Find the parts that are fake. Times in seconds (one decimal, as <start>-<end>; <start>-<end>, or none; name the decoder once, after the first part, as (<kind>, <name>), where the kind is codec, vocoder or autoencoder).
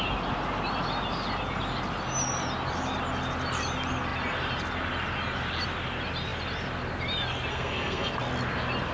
7.5-8.1 (codec, SNAC)